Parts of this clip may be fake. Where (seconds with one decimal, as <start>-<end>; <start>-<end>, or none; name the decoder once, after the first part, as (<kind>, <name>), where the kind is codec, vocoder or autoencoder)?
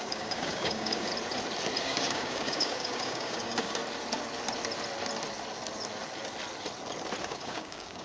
0.0-1.1 (codec, DAC); 1.8-3.8; 7.2-8.0